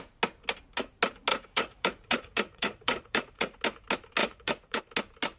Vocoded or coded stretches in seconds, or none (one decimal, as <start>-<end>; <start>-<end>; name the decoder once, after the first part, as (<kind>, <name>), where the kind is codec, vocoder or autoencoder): 1.3-3.6 (vocoder, Vocos); 4.2-4.8